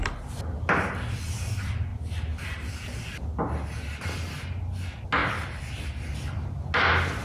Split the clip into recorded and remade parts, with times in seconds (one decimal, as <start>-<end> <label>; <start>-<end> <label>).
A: 0.0-1.9 recorded; 1.9-2.7 remade; 2.7-5.2 recorded; 5.2-5.7 remade; 5.7-7.2 recorded